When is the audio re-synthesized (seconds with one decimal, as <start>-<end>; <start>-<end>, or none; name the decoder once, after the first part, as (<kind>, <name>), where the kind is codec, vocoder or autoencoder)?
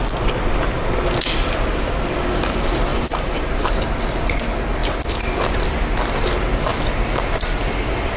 2.9-3.7 (vocoder, BigVGAN v2)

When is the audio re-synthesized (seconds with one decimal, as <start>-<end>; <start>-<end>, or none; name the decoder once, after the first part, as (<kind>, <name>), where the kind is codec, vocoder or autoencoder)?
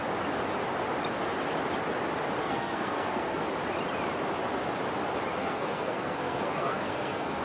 2.4-3.4 (codec, SNAC); 5.4-7.4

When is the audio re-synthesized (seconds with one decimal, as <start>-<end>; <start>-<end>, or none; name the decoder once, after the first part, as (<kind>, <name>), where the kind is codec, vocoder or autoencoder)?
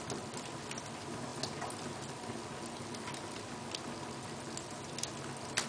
none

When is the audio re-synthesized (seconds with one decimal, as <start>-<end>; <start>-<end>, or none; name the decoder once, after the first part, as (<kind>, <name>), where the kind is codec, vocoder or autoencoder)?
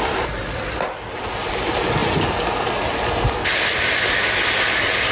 none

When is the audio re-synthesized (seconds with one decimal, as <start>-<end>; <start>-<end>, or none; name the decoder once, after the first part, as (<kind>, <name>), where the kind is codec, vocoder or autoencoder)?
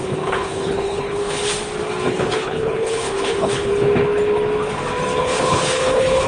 0.0-1.4 (codec, HILCodec); 2.1-3.7; 5.2-6.3